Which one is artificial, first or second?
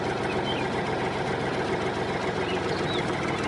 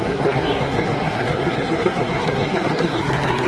second